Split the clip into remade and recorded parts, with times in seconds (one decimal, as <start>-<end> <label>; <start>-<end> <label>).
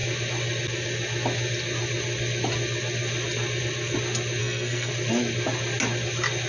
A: 0.0-4.4 recorded; 4.4-4.9 remade; 4.9-6.5 recorded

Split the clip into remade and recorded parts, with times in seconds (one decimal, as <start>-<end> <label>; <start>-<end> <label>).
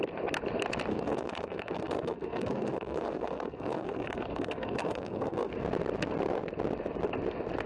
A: 0.0-0.9 recorded; 0.9-5.5 remade; 5.5-7.7 recorded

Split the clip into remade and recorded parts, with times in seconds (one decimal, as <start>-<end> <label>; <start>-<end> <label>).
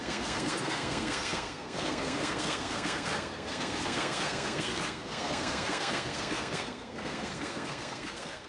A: 0.0-8.5 remade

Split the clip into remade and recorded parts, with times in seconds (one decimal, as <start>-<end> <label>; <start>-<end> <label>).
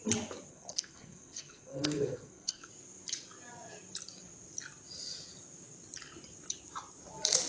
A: 0.0-0.5 recorded; 0.5-2.7 remade; 2.7-7.5 recorded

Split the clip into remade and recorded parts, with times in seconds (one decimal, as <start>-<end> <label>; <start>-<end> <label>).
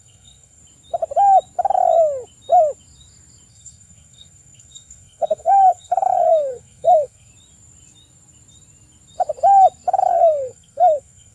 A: 0.0-0.6 remade; 0.6-3.5 recorded; 3.5-7.3 remade; 7.3-10.1 recorded; 10.1-11.3 remade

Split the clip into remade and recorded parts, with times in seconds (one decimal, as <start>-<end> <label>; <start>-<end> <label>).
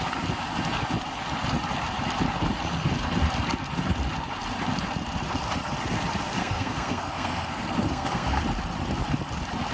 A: 0.0-6.4 recorded; 6.4-8.4 remade; 8.4-9.7 recorded